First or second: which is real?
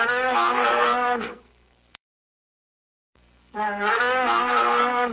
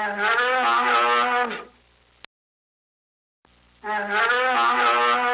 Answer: second